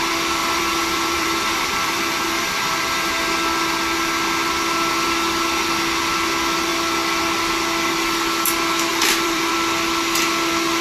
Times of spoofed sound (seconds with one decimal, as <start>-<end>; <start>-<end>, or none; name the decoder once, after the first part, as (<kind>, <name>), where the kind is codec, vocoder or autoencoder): 0.4-3.1 (vocoder, BigVGAN v2); 8.9-9.5